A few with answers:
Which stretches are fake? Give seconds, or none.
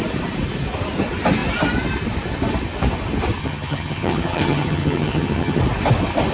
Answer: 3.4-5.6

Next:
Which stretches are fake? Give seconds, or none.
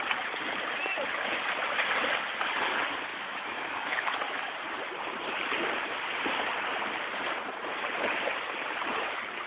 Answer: 3.1-4.5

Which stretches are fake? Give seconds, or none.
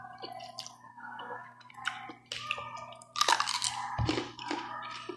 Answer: 0.9-1.7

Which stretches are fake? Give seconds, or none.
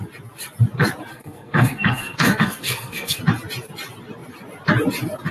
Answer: 1.1-3.2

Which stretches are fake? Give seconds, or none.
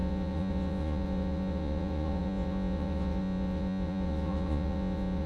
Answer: 0.0-5.3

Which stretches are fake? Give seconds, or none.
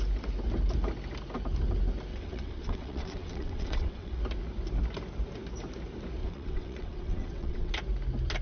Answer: 2.1-4.2; 6.2-7.7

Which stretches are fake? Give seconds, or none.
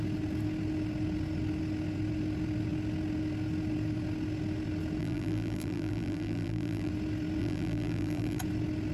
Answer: 5.0-6.9; 7.4-8.4